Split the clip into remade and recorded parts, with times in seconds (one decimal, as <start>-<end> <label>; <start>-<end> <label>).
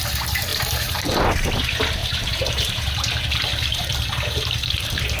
0.0-0.5 recorded; 0.5-1.2 remade; 1.2-2.0 recorded; 2.0-5.2 remade